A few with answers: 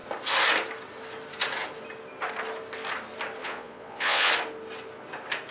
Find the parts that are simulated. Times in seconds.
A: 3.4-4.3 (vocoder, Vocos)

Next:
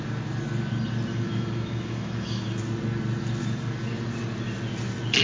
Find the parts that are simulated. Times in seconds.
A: 1.1-2.6 (autoencoder, DAC-VAE)